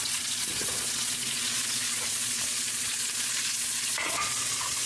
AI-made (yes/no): yes